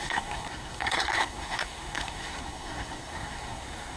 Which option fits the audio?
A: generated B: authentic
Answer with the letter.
A